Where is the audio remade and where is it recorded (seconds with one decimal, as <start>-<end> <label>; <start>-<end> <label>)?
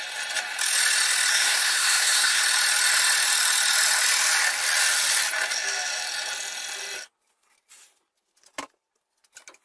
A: 0.0-1.3 recorded; 1.3-2.4 remade; 2.4-9.6 recorded